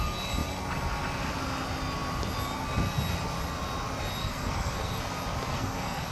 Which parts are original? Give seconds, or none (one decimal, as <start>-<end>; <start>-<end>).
0.0-4.2; 5.0-5.5